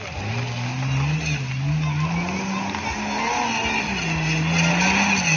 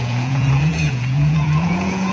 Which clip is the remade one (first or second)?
second